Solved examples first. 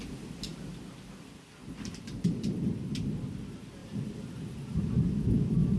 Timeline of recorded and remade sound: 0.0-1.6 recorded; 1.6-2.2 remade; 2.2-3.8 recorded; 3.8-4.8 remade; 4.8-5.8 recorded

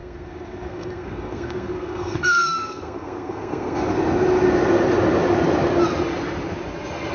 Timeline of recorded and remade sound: 0.0-3.9 remade; 3.9-7.1 recorded

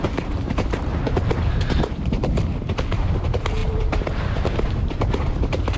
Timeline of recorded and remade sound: 0.0-0.9 remade; 0.9-1.5 recorded; 1.5-5.8 remade

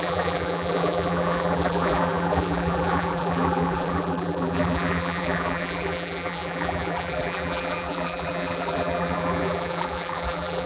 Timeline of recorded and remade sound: 0.0-10.7 remade

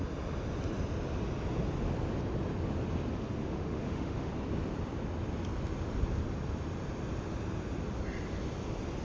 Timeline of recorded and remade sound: 0.0-3.4 recorded; 3.4-4.3 remade; 4.3-9.0 recorded

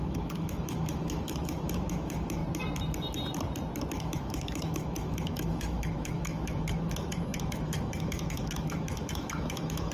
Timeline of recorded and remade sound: 0.0-2.4 remade; 2.4-3.9 recorded; 3.9-9.9 remade

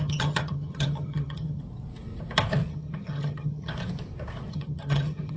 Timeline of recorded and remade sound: 0.0-1.6 remade; 1.6-2.7 recorded; 2.7-3.7 remade; 3.7-4.5 recorded; 4.5-5.4 remade